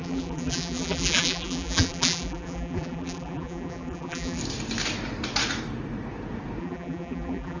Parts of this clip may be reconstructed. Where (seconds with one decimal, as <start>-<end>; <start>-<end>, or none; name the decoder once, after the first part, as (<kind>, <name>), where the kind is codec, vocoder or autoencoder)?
0.0-4.4 (vocoder, BigVGAN v2); 6.6-7.6